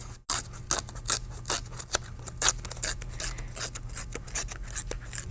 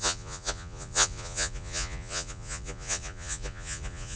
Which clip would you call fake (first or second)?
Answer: second